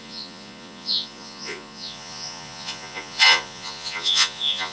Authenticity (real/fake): fake